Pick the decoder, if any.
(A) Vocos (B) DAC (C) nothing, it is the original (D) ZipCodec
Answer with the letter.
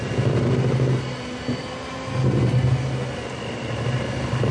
C